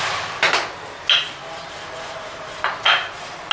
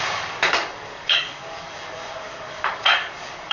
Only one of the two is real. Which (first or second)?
first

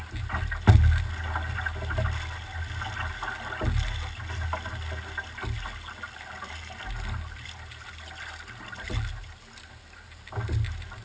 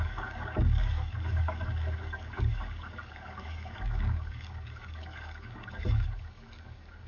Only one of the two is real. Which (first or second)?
first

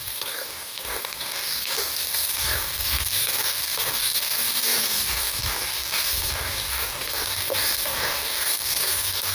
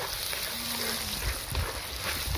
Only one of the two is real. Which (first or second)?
second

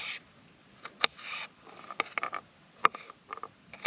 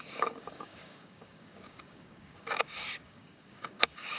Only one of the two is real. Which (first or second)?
first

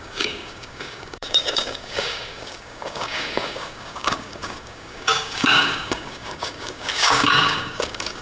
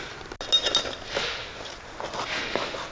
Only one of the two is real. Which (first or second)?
second